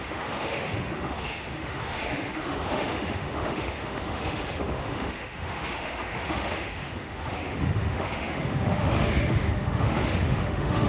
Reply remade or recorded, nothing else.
remade